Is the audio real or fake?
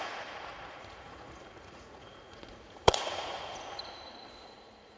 fake